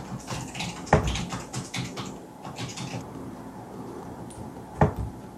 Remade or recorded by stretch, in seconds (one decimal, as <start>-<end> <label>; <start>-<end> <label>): 0.0-5.4 recorded

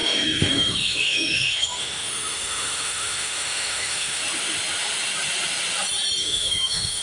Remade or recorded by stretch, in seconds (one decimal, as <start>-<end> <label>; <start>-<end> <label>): 0.0-4.2 remade; 4.2-6.2 recorded; 6.2-7.0 remade

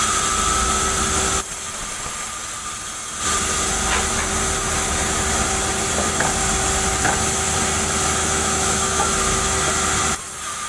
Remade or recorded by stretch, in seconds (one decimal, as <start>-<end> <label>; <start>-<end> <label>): 0.0-8.2 recorded; 8.2-9.1 remade; 9.1-10.7 recorded